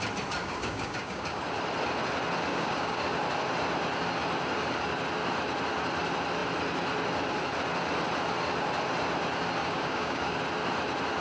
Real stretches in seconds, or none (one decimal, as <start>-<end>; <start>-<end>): 0.0-0.4; 1.4-2.5; 3.0-9.6; 10.4-11.2